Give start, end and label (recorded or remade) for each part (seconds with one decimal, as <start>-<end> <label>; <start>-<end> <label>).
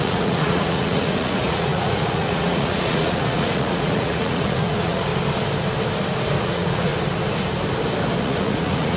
0.0-5.1 remade; 5.1-6.4 recorded; 6.4-6.9 remade; 6.9-8.2 recorded; 8.2-9.0 remade